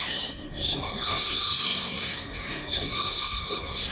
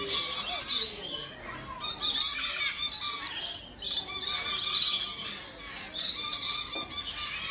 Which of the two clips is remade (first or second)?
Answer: first